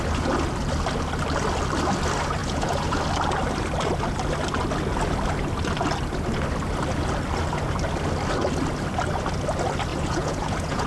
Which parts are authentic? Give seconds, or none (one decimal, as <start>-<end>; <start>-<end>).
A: 0.0-2.4; 3.0-9.9